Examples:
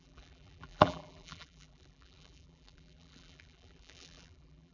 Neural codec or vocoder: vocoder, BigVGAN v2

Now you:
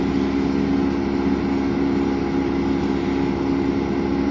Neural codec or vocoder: none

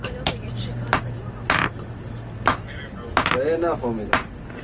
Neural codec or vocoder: none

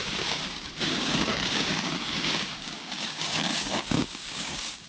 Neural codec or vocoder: codec, DAC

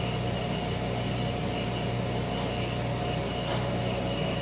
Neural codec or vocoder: none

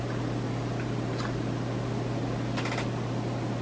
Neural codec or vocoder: none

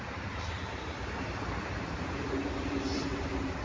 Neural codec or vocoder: vocoder, BigVGAN v2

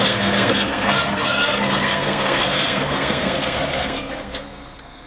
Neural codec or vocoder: codec, SNAC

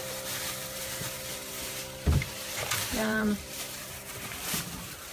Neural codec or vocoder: vocoder, BigVGAN v2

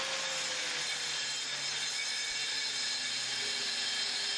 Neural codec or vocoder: none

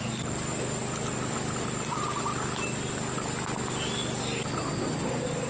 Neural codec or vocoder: none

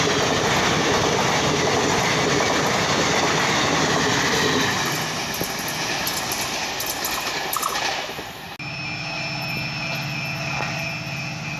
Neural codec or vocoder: none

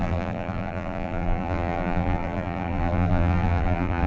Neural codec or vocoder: vocoder, BigVGAN v2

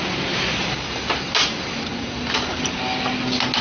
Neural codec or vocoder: none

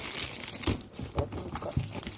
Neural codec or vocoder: none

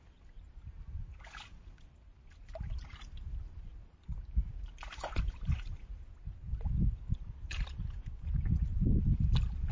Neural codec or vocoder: none